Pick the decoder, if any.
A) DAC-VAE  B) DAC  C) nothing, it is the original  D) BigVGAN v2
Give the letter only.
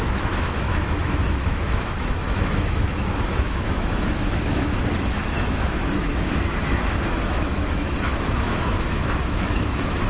A